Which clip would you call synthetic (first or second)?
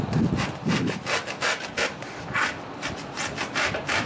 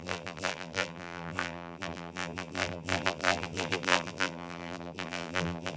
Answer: second